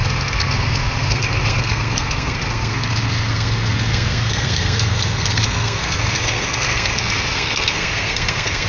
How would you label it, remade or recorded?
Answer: remade